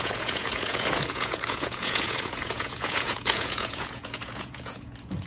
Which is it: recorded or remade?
remade